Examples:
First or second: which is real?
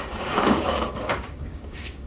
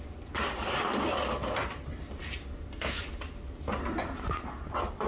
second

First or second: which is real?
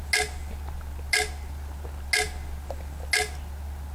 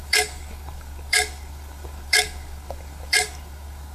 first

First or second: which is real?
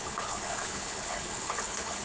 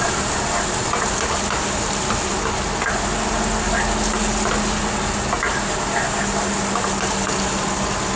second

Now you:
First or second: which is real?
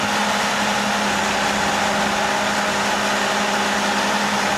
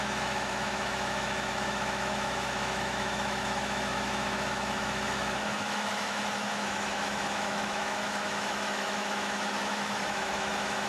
first